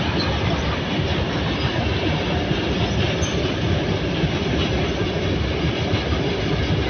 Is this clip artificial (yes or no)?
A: no